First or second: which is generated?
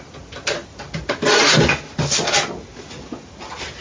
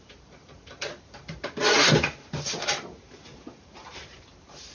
second